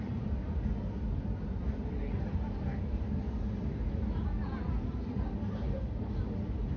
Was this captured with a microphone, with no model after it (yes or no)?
yes